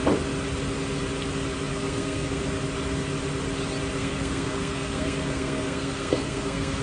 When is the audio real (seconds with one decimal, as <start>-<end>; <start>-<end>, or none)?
0.0-1.7; 2.4-4.0